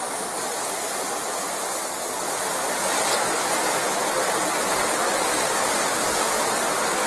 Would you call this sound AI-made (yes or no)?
no